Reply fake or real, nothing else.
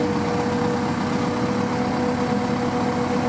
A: real